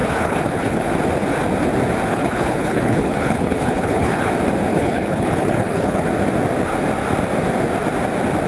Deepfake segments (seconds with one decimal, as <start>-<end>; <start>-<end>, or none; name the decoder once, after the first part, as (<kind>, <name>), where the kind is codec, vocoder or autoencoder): 0.0-0.9 (codec, HILCodec); 2.1-4.3; 4.7-6.1